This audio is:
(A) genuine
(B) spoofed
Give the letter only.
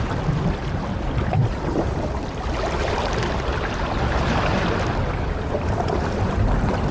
A